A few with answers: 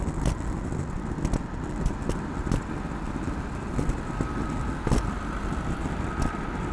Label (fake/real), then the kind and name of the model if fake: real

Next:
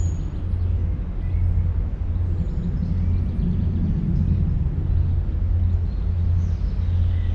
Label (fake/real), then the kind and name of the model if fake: real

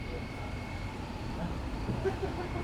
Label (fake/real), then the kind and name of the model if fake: fake, vocoder, BigVGAN v2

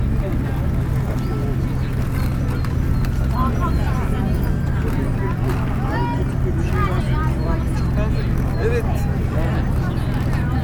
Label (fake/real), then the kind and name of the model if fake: real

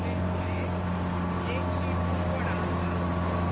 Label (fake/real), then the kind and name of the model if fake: real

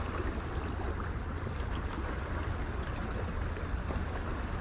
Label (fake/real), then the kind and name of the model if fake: real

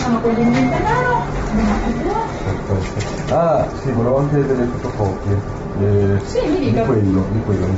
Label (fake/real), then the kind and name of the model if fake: fake, vocoder, BigVGAN v2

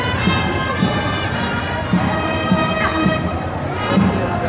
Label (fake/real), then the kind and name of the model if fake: fake, vocoder, BigVGAN v2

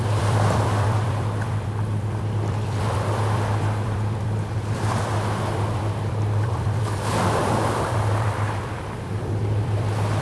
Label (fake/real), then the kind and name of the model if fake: fake, vocoder, BigVGAN v2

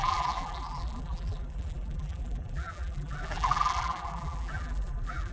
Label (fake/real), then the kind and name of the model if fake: fake, vocoder, BigVGAN v2